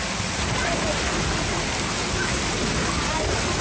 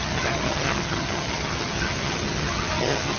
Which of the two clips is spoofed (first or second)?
second